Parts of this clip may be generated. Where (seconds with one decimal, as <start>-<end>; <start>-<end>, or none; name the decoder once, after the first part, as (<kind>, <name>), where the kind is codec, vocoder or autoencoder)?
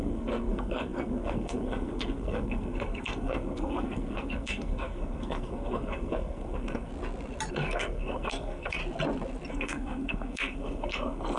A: 0.0-6.9 (codec, SNAC); 7.5-8.8; 9.5-11.4